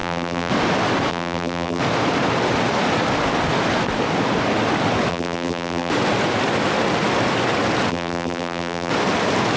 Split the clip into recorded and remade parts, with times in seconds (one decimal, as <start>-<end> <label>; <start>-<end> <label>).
0.0-0.5 remade; 0.5-1.1 recorded; 1.1-1.8 remade; 1.8-5.1 recorded; 5.1-5.9 remade; 5.9-7.9 recorded; 7.9-8.9 remade; 8.9-9.6 recorded